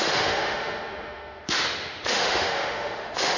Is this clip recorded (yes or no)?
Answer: no